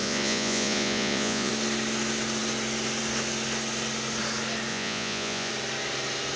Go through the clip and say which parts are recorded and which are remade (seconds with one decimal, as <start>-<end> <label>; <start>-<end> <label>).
0.0-1.5 remade; 1.5-4.7 recorded; 4.7-5.5 remade; 5.5-6.4 recorded